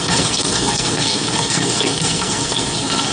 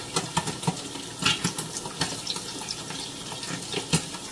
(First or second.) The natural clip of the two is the second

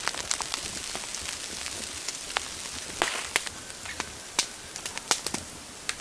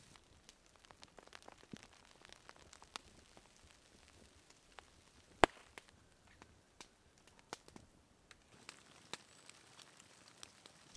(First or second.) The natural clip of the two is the first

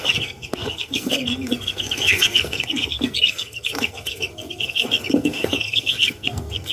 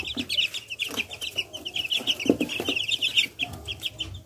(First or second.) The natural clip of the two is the second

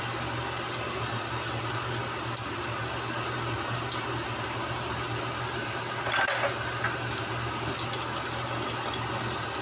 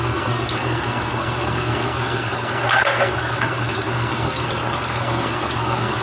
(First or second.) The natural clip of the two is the first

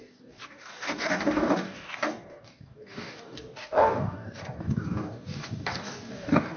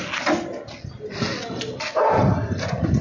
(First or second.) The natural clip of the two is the second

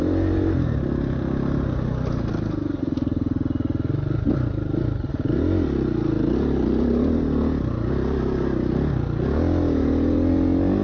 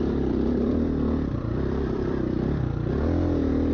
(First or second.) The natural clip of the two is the first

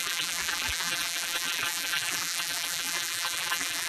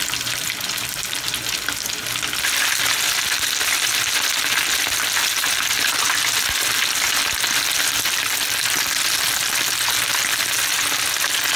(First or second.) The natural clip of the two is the second